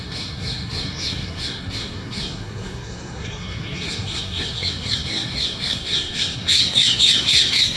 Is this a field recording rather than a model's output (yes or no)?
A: no